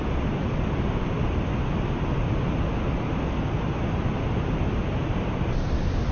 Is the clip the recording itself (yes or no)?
yes